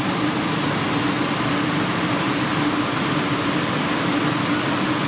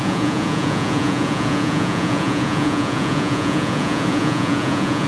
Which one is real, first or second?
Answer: first